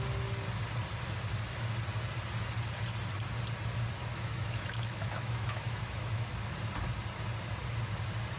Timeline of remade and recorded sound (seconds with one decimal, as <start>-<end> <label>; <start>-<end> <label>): 0.0-4.0 recorded; 4.0-6.3 remade; 6.3-8.4 recorded